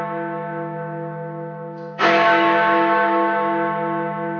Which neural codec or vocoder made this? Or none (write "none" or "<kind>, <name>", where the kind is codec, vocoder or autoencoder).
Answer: autoencoder, DAC-VAE